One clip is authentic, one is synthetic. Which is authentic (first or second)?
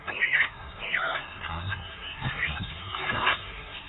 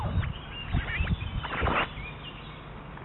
second